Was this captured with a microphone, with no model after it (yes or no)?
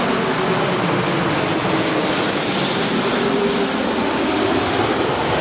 yes